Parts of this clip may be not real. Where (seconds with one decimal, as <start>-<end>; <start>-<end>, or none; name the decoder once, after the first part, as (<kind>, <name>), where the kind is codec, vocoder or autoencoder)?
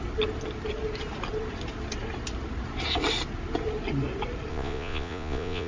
4.5-5.7 (vocoder, Vocos)